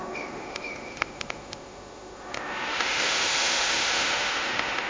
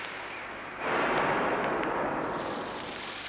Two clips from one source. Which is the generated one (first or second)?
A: first